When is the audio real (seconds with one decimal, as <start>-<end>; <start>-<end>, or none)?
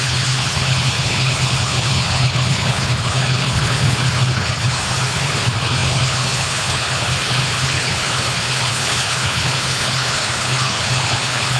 none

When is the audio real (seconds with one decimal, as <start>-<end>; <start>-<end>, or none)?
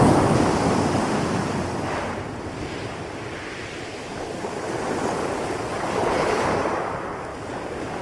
0.0-6.0; 6.5-8.0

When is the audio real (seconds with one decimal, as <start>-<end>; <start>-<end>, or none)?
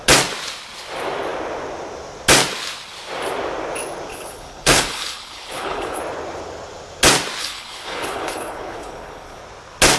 0.0-4.1; 6.0-7.4; 9.4-10.0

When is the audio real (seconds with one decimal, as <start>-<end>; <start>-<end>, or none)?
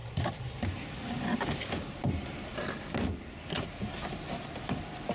0.0-5.1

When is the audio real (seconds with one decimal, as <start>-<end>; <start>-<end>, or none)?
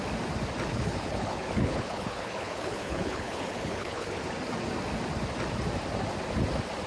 0.0-0.7; 4.2-6.9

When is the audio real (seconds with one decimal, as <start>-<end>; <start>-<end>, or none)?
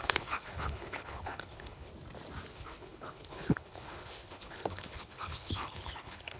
1.9-2.5